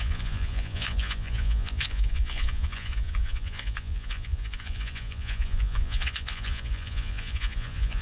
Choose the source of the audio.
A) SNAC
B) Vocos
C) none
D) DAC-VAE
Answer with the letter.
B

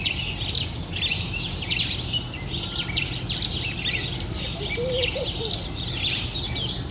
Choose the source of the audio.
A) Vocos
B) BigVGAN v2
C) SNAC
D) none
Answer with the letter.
D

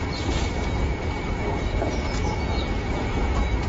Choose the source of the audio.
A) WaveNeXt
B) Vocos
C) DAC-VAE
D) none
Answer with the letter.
B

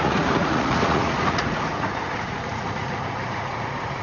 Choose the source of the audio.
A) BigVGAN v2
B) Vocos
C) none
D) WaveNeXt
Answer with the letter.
B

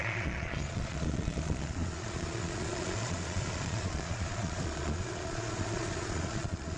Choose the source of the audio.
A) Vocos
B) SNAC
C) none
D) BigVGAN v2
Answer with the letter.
A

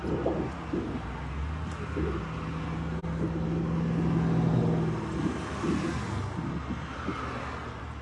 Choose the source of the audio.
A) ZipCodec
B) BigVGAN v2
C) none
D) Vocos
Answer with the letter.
C